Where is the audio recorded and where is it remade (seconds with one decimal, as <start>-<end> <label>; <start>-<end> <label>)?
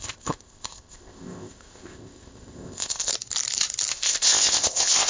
0.0-3.1 remade; 3.1-3.9 recorded; 3.9-5.1 remade